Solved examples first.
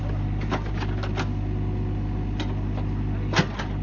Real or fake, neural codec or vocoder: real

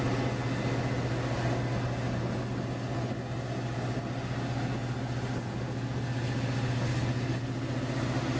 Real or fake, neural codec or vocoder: real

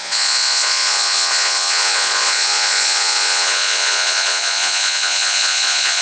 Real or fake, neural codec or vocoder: fake, vocoder, Vocos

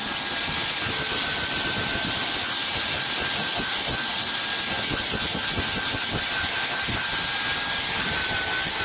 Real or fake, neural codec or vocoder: real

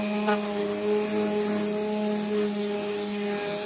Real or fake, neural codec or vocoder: real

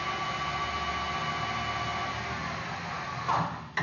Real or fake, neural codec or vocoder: real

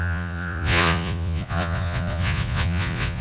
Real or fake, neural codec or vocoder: fake, vocoder, Vocos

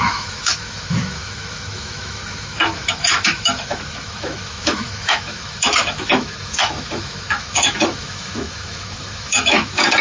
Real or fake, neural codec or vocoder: fake, autoencoder, DAC-VAE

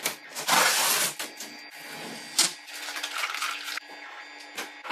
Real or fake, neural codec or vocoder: real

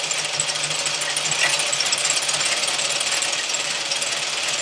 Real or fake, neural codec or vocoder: real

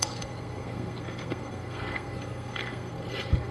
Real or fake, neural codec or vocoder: fake, codec, SNAC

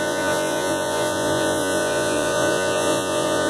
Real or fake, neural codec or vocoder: fake, vocoder, Vocos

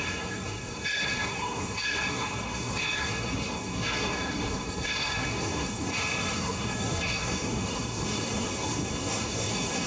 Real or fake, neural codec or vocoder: fake, codec, SNAC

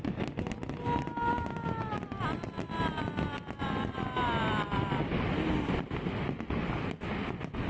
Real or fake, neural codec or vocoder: real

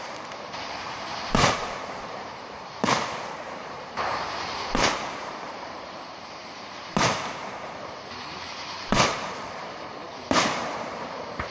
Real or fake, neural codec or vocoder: fake, vocoder, BigVGAN v2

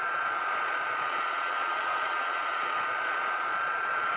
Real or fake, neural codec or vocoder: fake, vocoder, Vocos